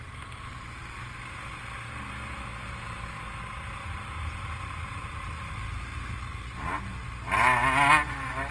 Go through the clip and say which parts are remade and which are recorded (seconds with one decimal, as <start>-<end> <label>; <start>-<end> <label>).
0.0-8.5 recorded